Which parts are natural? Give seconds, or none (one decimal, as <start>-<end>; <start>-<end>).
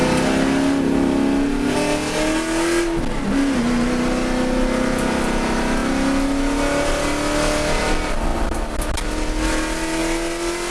0.0-10.7